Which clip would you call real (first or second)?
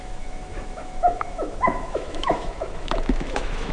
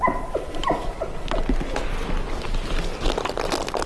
second